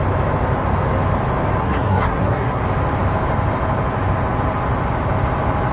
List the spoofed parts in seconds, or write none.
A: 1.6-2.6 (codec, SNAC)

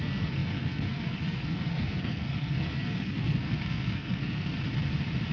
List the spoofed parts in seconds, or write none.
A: 0.0-4.5 (codec, SNAC)

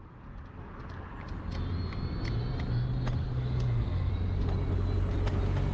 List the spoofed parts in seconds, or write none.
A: 3.2-4.1 (codec, SNAC)

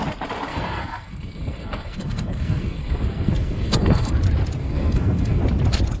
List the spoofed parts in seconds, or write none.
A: 0.5-4.1 (codec, SNAC); 4.6-5.4

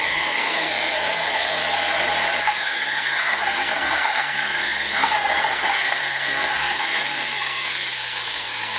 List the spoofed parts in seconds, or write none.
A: 0.0-1.6 (codec, SNAC); 2.4-8.8

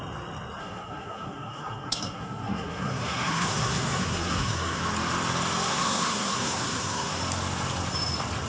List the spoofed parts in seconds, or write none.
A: 0.6-4.8 (codec, SNAC); 5.7-7.2

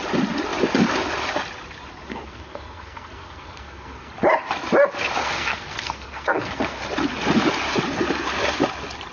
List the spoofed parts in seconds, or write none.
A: 2.1-4.1 (codec, SNAC); 5.2-6.8

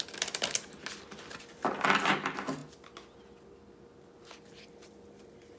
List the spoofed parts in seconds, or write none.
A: none